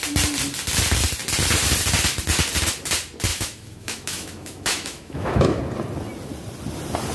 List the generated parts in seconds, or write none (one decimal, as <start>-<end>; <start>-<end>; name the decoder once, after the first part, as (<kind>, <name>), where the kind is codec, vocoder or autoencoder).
3.3-5.6 (autoencoder, DAC-VAE)

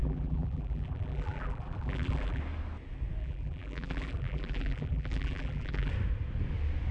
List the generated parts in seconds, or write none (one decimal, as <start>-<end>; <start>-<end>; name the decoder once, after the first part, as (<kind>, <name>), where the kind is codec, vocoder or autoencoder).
0.0-2.4 (vocoder, BigVGAN v2); 3.2-5.9

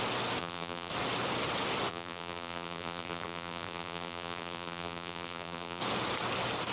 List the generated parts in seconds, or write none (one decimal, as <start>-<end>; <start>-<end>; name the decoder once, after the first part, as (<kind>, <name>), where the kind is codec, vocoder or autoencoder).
0.4-0.9 (vocoder, BigVGAN v2); 1.9-5.8

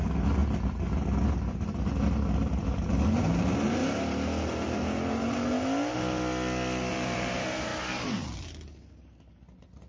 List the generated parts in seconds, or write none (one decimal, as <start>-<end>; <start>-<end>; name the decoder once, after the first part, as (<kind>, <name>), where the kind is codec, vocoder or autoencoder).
0.0-0.4 (vocoder, BigVGAN v2); 2.8-3.8; 6.9-7.7